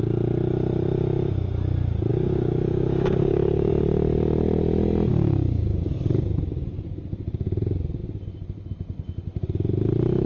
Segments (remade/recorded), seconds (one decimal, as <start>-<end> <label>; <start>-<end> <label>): 0.0-2.1 recorded; 2.1-3.7 remade; 3.7-5.1 recorded; 5.1-5.8 remade; 5.8-10.3 recorded

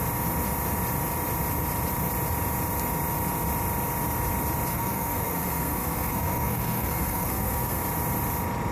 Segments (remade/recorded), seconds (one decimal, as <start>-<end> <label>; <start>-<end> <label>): 0.0-4.7 recorded; 4.7-7.8 remade; 7.8-8.7 recorded

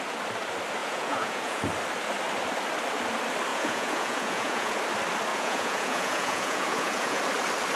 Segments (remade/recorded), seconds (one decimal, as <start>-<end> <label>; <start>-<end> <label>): 0.0-0.8 recorded; 0.8-1.6 remade; 1.6-3.5 recorded; 3.5-4.8 remade; 4.8-5.3 recorded; 5.3-7.2 remade; 7.2-7.8 recorded

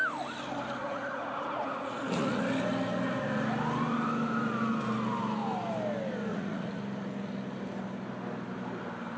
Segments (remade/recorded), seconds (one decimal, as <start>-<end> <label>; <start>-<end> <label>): 0.0-0.8 recorded; 0.8-2.4 remade; 2.4-6.3 recorded; 6.3-6.8 remade; 6.8-9.2 recorded

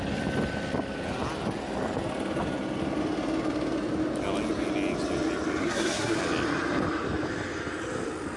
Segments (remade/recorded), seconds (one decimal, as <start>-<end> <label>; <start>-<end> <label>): 0.0-5.6 recorded; 5.6-6.2 remade; 6.2-8.4 recorded